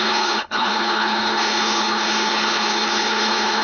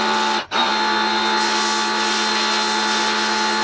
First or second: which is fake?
first